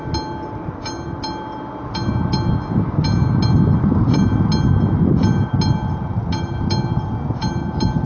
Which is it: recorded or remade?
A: recorded